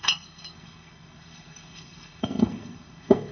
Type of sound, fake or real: fake